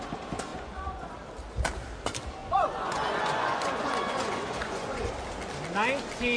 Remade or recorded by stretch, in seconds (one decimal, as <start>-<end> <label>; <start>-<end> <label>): 0.0-0.5 recorded; 0.5-1.1 remade; 1.1-2.4 recorded; 2.4-5.1 remade; 5.1-6.4 recorded